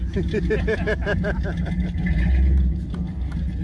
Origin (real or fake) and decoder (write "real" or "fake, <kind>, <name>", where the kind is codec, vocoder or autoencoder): real